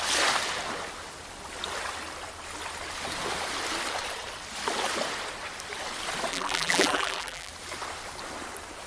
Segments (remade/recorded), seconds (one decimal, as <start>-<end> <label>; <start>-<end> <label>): 0.0-6.3 recorded; 6.3-7.5 remade; 7.5-8.9 recorded